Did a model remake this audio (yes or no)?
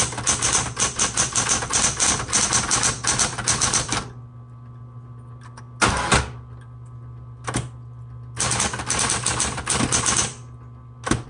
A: no